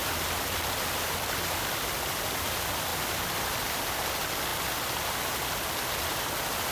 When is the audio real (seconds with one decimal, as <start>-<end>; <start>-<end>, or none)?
0.0-6.7